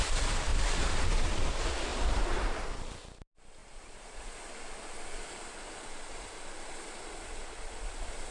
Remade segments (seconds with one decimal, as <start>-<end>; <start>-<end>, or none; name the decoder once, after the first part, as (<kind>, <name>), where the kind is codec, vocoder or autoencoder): 1.9-2.4 (vocoder, BigVGAN v2); 3.6-4.2